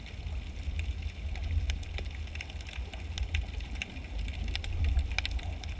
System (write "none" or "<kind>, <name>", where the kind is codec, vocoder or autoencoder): none